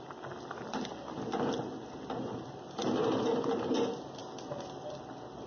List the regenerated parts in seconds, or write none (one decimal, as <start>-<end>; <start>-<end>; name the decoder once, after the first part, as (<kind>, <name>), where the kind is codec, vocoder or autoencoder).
none